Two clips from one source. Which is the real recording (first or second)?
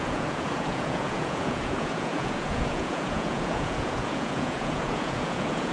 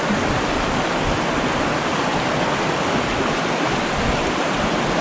second